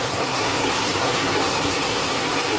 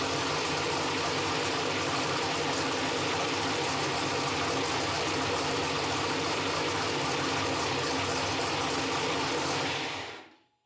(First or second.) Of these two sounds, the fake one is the first